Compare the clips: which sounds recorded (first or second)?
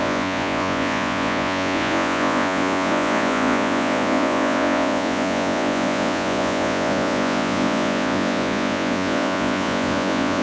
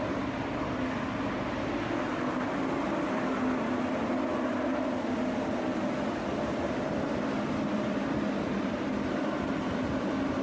second